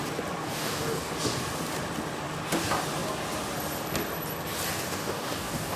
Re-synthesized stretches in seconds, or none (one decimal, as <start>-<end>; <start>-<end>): 0.4-1.1; 4.7-5.8